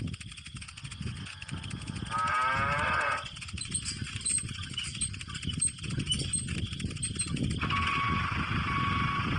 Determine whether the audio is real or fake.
real